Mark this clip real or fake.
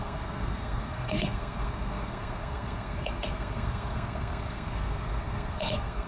fake